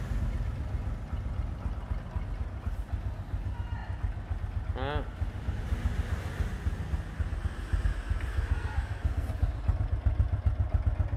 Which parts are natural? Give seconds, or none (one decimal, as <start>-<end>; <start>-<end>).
0.0-8.3; 9.3-11.2